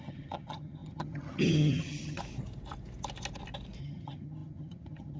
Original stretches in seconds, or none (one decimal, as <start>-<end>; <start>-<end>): 2.2-3.8